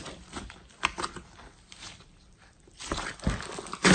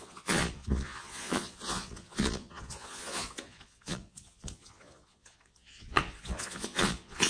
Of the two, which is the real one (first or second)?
first